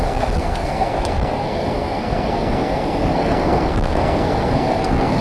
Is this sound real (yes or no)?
no